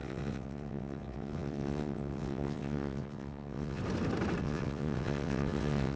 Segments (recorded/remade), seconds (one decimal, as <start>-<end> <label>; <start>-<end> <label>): 0.0-3.8 remade; 3.8-4.4 recorded; 4.4-6.0 remade